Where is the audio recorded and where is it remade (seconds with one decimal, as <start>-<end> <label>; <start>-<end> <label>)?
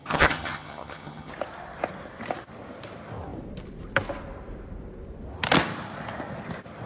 0.0-1.3 remade; 1.3-6.9 recorded